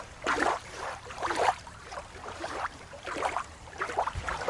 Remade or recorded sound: remade